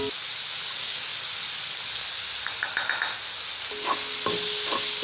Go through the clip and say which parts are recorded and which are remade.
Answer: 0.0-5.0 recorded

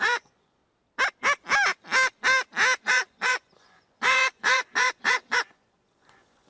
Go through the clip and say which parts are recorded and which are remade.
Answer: 0.0-0.6 remade; 0.6-2.8 recorded; 2.8-6.5 remade

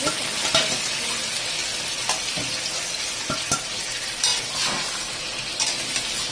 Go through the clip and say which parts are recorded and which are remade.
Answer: 0.0-6.3 recorded

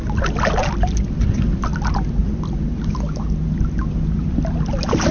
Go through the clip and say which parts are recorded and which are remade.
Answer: 0.0-5.1 recorded

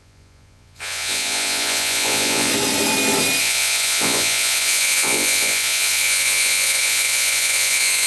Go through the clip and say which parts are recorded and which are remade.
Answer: 0.0-2.5 remade; 2.5-3.4 recorded; 3.4-8.1 remade